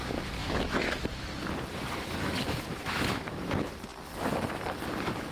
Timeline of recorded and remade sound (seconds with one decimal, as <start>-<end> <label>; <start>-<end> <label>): 0.0-0.4 recorded; 0.4-0.9 remade; 0.9-1.7 recorded; 1.7-3.2 remade; 3.2-5.3 recorded

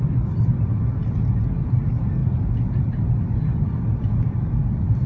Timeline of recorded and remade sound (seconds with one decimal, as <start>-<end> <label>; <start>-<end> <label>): 0.0-2.2 recorded; 2.2-3.2 remade; 3.2-5.1 recorded

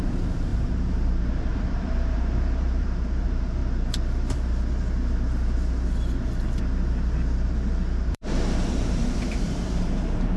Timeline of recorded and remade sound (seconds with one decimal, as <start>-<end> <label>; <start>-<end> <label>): 0.0-3.6 remade; 3.6-8.1 recorded; 8.1-10.4 remade

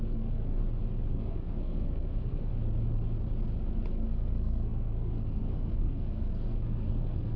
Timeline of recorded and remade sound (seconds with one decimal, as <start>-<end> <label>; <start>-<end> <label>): 0.0-0.6 remade; 0.6-1.1 recorded; 1.1-2.5 remade; 2.5-3.9 recorded; 3.9-7.4 remade

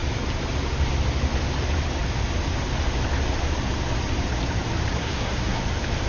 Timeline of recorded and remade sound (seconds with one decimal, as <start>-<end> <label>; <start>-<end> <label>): 0.0-5.0 recorded; 5.0-5.6 remade; 5.6-6.1 recorded

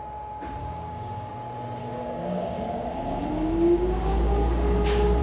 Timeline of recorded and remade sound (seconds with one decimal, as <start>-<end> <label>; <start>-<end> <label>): 0.0-0.6 recorded; 0.6-1.3 remade; 1.3-1.8 recorded; 1.8-5.2 remade

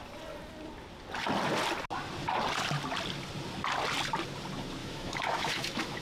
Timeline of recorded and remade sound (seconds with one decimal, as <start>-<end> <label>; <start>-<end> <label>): 0.0-4.8 recorded; 4.8-6.0 remade